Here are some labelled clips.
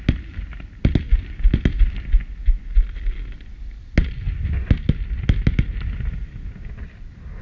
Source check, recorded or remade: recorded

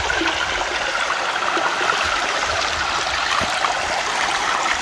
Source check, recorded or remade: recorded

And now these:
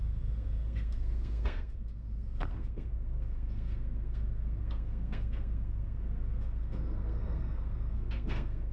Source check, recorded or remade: remade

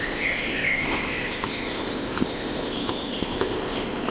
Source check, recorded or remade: remade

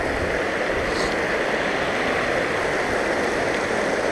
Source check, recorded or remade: recorded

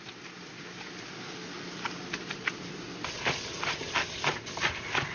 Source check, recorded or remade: recorded